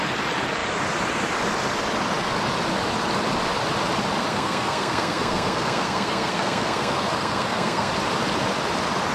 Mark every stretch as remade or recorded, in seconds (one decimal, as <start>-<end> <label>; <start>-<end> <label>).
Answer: 0.0-4.2 recorded; 4.2-7.9 remade; 7.9-9.1 recorded